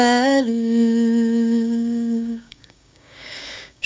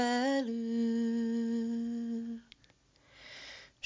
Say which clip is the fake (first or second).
first